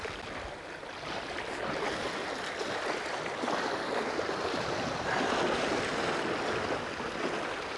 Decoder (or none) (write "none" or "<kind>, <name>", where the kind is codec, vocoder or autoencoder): none